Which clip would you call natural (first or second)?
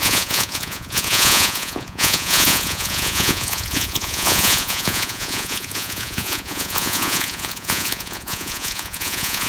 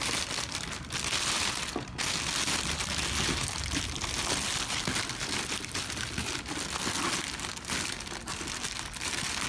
second